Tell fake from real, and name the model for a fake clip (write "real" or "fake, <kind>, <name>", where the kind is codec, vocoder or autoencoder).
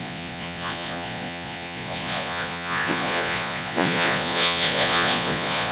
fake, vocoder, Vocos